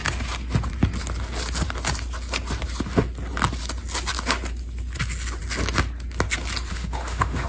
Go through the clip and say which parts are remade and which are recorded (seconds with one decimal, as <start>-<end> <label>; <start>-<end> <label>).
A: 0.0-6.7 recorded; 6.7-7.5 remade